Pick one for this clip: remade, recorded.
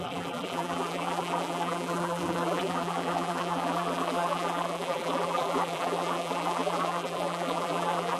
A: remade